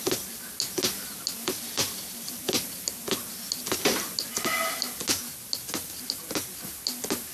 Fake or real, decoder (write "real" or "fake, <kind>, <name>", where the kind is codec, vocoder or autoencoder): real